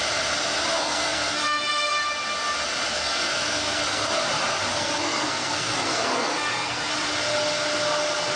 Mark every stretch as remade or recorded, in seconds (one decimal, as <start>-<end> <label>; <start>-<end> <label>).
0.0-0.7 recorded; 0.7-1.9 remade; 1.9-2.9 recorded; 2.9-4.2 remade; 4.2-4.7 recorded; 4.7-6.9 remade; 6.9-8.4 recorded